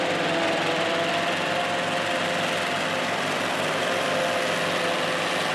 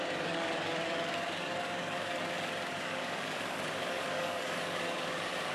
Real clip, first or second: first